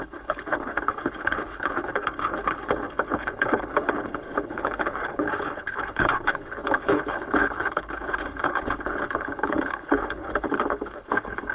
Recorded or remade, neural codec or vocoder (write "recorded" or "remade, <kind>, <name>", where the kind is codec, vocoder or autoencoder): remade, codec, HILCodec